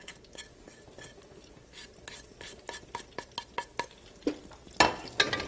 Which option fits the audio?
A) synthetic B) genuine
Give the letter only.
B